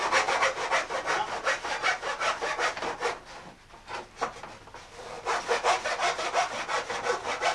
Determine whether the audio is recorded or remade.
recorded